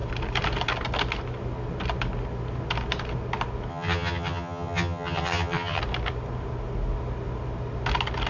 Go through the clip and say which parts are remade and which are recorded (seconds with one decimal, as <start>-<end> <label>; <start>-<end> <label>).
0.0-3.7 recorded; 3.7-5.8 remade; 5.8-8.3 recorded